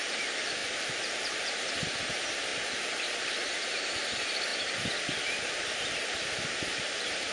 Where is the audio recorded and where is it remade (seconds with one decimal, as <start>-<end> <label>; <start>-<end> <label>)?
0.0-2.5 remade; 2.5-3.3 recorded; 3.3-4.5 remade; 4.5-6.6 recorded; 6.6-7.3 remade